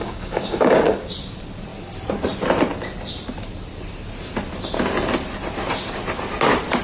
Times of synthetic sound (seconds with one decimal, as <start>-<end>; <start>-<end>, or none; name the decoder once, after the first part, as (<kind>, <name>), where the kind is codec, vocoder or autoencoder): 0.0-1.1 (codec, DAC)